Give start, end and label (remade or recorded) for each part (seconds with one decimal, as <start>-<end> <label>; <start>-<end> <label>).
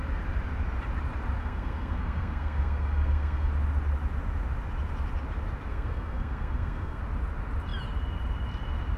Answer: 0.0-1.4 recorded; 1.4-3.5 remade; 3.5-5.7 recorded; 5.7-7.0 remade; 7.0-9.0 recorded